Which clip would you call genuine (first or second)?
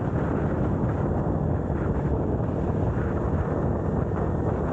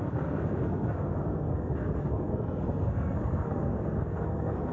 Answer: first